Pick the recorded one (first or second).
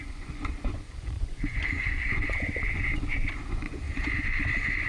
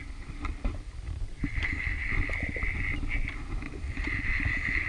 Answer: second